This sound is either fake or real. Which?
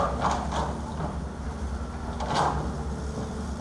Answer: real